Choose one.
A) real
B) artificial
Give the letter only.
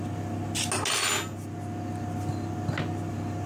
A